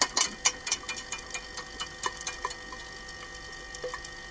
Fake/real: real